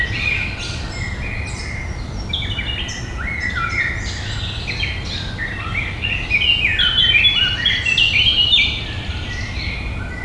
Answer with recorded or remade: recorded